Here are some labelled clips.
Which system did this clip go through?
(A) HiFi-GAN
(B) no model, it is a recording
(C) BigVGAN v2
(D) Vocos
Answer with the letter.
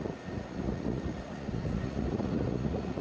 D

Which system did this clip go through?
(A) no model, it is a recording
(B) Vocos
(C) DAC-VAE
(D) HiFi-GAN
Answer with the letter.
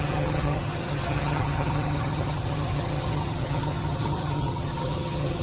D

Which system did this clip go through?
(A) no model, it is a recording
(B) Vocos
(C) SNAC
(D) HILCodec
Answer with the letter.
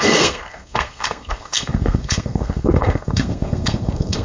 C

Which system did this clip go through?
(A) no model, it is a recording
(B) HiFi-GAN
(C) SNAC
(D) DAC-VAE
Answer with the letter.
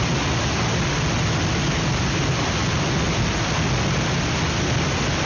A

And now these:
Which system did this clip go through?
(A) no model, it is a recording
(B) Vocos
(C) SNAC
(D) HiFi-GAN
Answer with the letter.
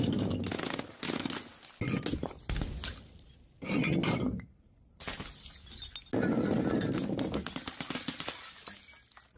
A